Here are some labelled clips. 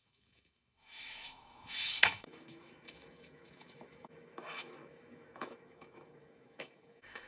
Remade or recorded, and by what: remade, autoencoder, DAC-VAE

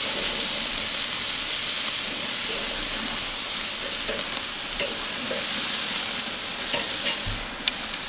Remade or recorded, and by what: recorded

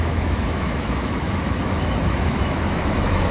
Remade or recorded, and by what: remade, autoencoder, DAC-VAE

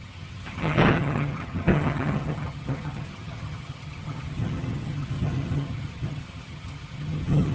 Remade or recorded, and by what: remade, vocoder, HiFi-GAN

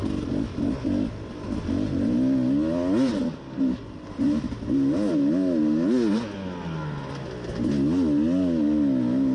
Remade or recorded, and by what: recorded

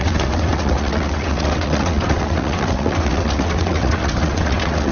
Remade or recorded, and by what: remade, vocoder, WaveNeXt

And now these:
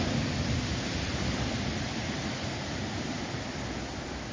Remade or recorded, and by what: remade, vocoder, BigVGAN v2